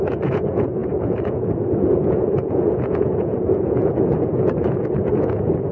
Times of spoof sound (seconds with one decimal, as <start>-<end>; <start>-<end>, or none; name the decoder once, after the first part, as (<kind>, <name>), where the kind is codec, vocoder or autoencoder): 0.0-5.7 (vocoder, Vocos)